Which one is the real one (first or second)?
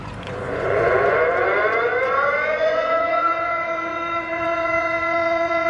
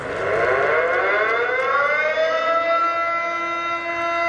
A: second